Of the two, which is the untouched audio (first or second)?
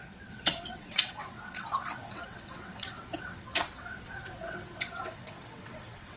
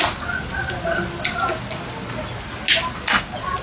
second